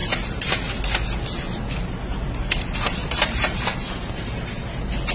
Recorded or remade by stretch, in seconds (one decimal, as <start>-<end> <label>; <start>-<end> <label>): 0.0-3.1 recorded; 3.1-5.1 remade